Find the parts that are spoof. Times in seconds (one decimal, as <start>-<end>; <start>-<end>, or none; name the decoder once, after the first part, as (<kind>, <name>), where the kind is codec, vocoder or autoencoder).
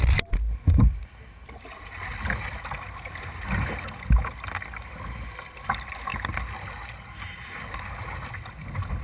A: none